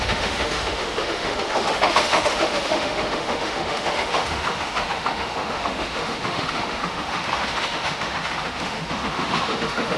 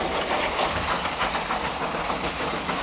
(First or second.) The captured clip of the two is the second